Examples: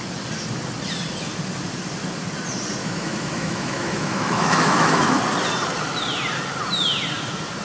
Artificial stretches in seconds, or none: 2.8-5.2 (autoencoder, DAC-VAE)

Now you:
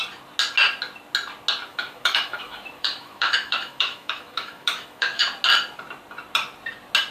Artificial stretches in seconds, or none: 1.7-5.2 (autoencoder, DAC-VAE)

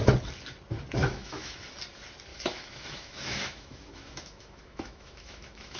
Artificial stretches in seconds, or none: 1.0-1.6 (autoencoder, DAC-VAE); 2.3-5.8